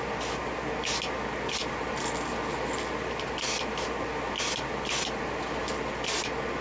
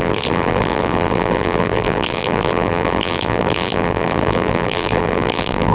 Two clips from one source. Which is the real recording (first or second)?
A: first